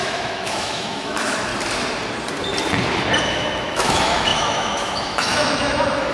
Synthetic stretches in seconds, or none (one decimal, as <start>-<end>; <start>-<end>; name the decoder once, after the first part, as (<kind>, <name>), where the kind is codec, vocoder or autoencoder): 0.0-1.5 (autoencoder, DAC-VAE); 3.2-6.1